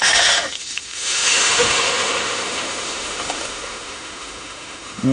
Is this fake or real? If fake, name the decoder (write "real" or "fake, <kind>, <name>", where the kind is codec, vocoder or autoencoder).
fake, autoencoder, DAC-VAE